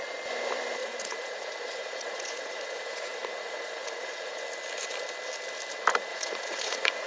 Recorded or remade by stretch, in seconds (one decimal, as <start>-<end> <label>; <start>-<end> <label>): 0.0-0.8 recorded; 0.8-4.4 remade; 4.4-6.1 recorded; 6.1-7.1 remade